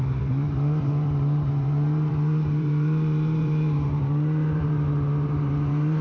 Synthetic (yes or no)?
yes